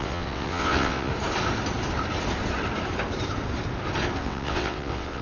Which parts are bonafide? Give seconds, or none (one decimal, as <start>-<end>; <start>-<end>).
1.1-4.2